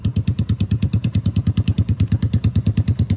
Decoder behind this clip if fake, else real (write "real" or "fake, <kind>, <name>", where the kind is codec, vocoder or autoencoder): fake, vocoder, BigVGAN v2